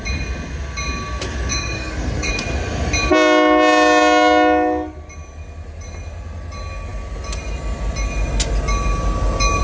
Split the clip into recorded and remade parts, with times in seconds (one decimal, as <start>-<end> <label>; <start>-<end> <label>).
0.0-1.5 recorded; 1.5-2.3 remade; 2.3-9.6 recorded